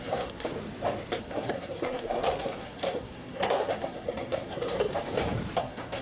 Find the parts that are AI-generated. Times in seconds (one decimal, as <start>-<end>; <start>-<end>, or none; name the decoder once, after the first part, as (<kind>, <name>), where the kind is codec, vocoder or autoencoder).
0.0-0.5 (codec, SNAC); 1.2-4.9; 5.6-6.0